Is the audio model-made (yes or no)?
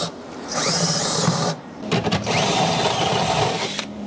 yes